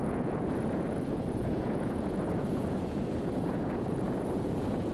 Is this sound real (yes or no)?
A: no